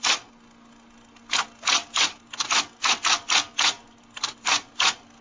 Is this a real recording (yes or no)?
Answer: yes